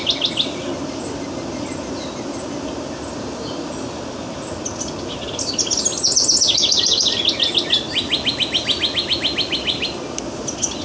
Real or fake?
real